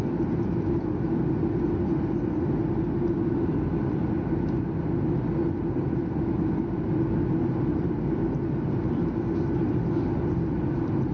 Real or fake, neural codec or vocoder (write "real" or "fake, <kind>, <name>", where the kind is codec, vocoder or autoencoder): real